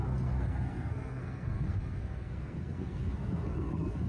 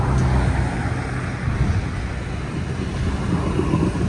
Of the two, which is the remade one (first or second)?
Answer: first